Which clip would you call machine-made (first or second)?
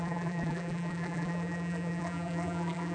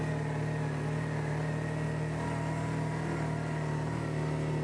first